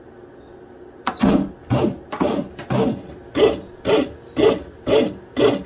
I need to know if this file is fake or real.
real